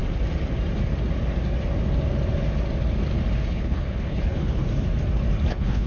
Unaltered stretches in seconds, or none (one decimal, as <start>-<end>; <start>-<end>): 0.0-3.5; 4.6-5.5

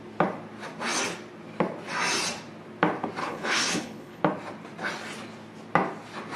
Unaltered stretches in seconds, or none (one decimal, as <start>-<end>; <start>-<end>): 0.0-3.2; 4.2-6.4

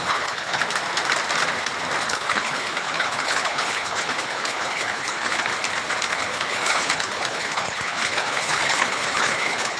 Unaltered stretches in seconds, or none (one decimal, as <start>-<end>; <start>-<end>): 0.6-2.0; 5.5-6.1

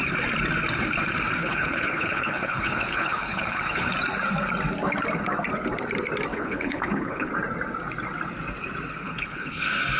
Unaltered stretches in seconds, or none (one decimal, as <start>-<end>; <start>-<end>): 0.0-1.4; 3.9-6.3; 7.3-9.0; 9.6-10.0